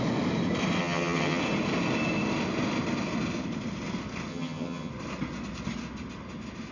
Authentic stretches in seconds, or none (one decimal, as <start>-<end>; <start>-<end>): 0.0-0.8; 1.4-4.3; 4.9-6.7